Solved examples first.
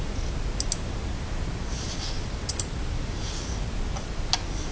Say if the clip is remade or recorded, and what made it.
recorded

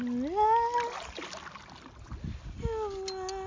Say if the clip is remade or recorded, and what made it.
recorded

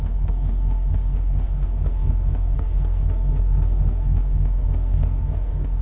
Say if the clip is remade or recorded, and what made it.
remade, codec, SNAC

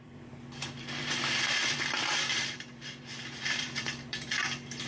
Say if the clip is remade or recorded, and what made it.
remade, vocoder, BigVGAN v2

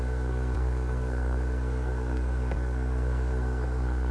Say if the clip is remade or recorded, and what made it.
remade, codec, SNAC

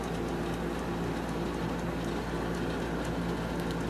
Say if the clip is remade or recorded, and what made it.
recorded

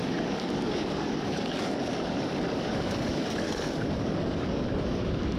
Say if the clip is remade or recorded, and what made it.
remade, codec, DAC